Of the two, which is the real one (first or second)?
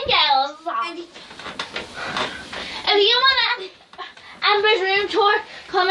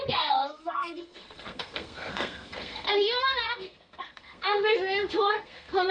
first